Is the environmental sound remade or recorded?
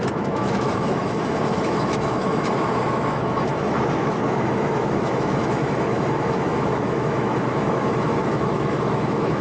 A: remade